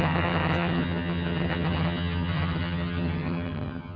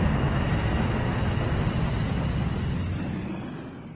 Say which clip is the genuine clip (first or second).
second